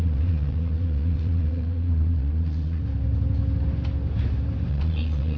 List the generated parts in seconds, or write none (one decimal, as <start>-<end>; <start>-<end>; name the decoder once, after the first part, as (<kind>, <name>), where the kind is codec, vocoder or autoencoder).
0.0-2.8 (vocoder, Vocos); 4.7-5.4